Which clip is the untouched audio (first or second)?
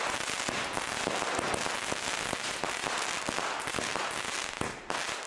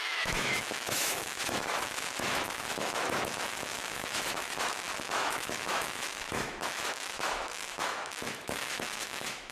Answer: first